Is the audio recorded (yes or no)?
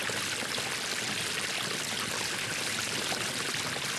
yes